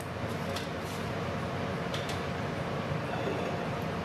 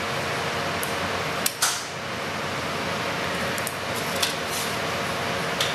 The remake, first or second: first